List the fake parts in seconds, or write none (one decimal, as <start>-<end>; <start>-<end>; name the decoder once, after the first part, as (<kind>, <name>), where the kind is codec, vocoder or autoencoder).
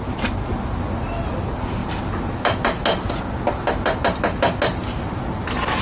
none